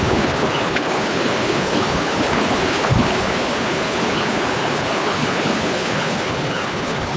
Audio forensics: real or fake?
fake